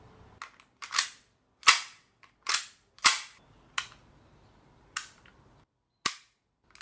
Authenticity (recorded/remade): recorded